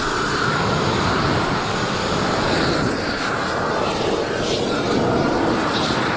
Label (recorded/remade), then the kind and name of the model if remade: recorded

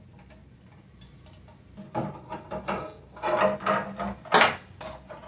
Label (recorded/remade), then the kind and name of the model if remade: recorded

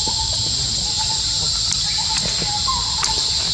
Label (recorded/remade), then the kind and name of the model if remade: recorded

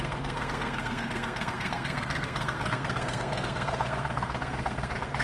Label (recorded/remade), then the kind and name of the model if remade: remade, codec, SNAC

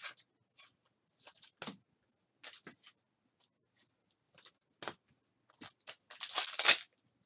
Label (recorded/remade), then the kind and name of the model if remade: recorded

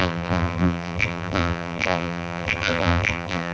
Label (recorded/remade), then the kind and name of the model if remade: remade, vocoder, BigVGAN v2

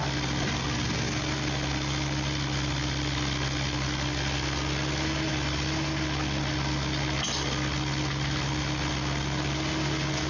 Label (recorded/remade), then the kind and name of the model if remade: recorded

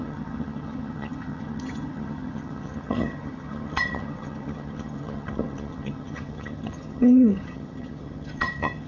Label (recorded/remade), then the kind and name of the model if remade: remade, vocoder, HiFi-GAN